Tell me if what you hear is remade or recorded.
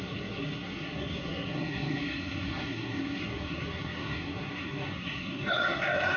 remade